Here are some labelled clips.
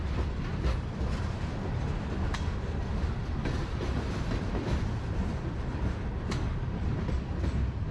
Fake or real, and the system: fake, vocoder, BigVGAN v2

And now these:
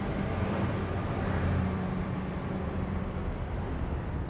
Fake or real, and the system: fake, vocoder, BigVGAN v2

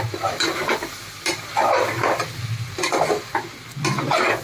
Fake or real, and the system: real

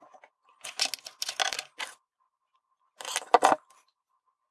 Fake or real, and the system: real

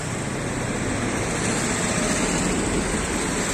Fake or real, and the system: real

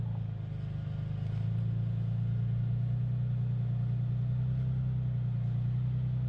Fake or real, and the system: real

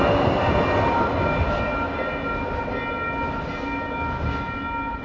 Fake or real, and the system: real